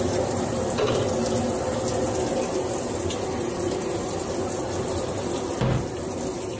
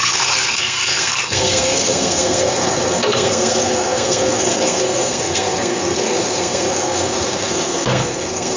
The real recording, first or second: first